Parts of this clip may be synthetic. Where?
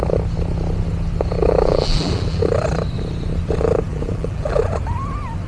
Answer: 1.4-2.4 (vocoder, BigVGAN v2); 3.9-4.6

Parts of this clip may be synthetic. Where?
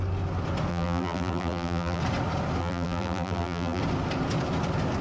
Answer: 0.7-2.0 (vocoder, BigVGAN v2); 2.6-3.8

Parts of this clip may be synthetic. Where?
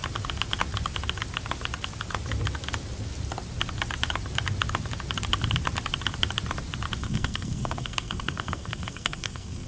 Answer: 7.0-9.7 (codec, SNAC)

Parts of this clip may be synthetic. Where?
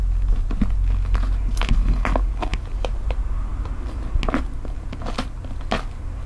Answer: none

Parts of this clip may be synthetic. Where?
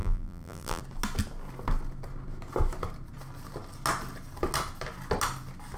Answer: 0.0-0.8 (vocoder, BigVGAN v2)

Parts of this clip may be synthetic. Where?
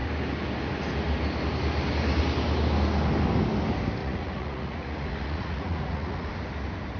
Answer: 4.0-6.3 (vocoder, Vocos)